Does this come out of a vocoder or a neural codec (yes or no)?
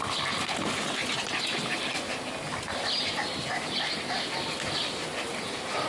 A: no